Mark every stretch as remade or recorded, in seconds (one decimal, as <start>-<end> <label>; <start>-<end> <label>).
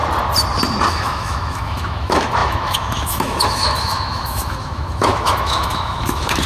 0.0-0.9 recorded; 0.9-6.5 remade